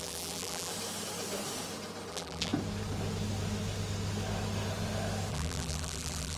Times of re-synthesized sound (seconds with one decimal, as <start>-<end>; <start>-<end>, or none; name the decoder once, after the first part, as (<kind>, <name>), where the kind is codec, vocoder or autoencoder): 0.0-0.7 (vocoder, BigVGAN v2); 2.1-2.5; 5.3-6.4